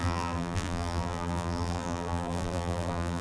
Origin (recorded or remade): remade